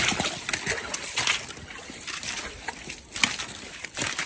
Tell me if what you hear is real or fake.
real